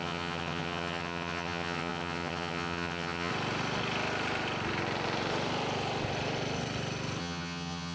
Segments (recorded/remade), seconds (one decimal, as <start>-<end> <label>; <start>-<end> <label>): 0.0-3.3 remade; 3.3-7.2 recorded; 7.2-7.9 remade